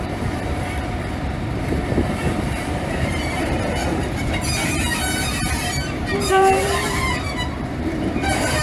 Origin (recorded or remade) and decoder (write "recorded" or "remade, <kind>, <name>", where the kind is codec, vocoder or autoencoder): remade, vocoder, BigVGAN v2